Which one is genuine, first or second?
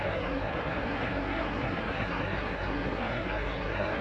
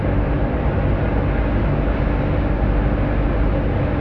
second